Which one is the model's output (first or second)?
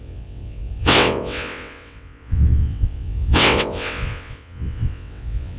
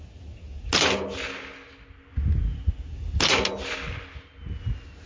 first